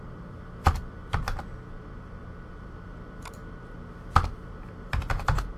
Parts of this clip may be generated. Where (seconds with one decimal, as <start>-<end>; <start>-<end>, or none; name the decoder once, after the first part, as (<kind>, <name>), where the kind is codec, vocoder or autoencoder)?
0.0-1.5 (vocoder, BigVGAN v2); 2.5-3.4; 4.7-5.6

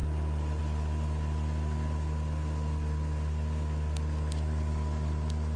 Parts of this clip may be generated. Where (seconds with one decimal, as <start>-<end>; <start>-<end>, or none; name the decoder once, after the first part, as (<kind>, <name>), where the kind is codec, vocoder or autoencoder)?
0.0-0.6 (vocoder, BigVGAN v2)